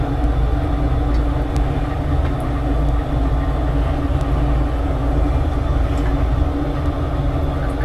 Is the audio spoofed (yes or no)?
no